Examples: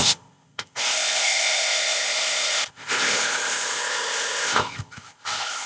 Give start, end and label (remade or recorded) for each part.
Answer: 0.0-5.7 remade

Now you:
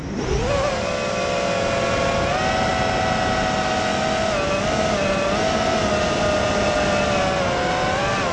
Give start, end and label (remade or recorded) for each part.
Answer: 0.0-8.3 recorded